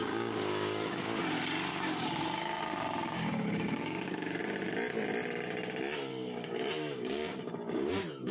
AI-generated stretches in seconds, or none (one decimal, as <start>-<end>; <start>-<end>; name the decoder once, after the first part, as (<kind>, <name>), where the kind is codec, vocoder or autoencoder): 0.0-1.2 (codec, DAC); 1.7-4.4; 6.1-7.9